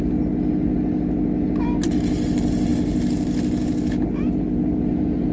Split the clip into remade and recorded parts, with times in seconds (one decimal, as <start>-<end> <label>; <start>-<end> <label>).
0.0-5.3 recorded